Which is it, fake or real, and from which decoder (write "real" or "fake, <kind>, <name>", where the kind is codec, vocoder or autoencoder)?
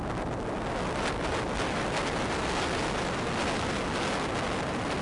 real